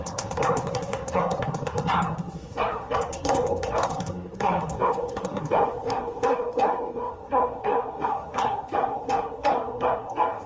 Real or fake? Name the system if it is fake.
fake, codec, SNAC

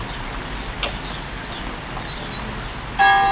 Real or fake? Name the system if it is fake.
real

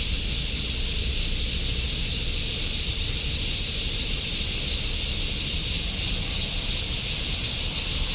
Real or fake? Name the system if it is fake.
real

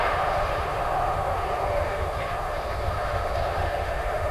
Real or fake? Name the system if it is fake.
fake, autoencoder, DAC-VAE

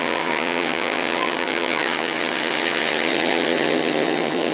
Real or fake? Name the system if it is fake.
fake, vocoder, HiFi-GAN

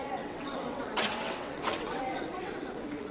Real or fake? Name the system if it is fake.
fake, vocoder, WaveNeXt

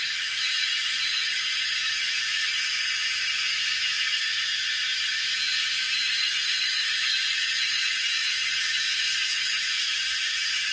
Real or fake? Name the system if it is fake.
fake, autoencoder, DAC-VAE